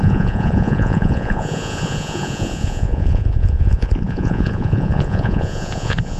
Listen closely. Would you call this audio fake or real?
fake